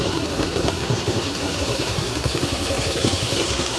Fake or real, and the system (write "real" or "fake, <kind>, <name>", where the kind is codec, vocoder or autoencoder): fake, codec, SNAC